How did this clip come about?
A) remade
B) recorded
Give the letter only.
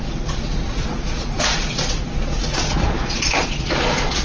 A